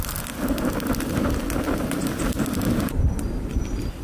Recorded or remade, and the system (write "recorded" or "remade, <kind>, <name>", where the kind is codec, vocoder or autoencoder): recorded